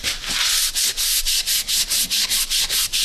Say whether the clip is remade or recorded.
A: recorded